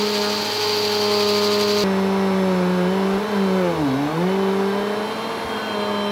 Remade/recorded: recorded